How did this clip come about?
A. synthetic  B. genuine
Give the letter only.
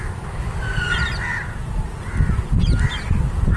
B